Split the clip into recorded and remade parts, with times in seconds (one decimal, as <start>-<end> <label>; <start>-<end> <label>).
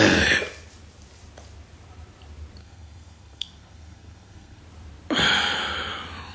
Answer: 0.0-2.6 recorded; 2.6-4.6 remade; 4.6-6.3 recorded